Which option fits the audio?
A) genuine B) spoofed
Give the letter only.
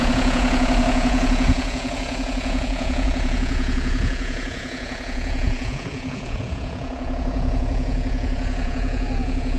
B